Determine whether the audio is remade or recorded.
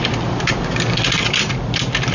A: recorded